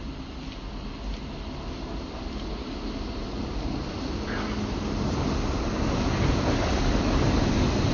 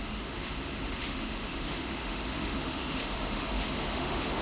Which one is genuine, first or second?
first